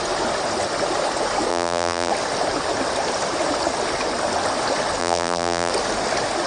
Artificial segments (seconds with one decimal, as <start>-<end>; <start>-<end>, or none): 1.5-2.1; 5.0-5.7